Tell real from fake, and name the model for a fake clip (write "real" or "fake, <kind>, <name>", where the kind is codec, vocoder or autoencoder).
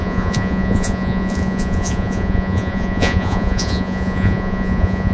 fake, vocoder, Vocos